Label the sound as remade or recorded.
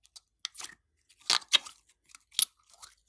recorded